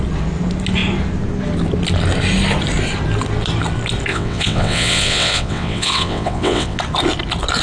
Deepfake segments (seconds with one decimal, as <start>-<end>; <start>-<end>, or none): 4.1-6.8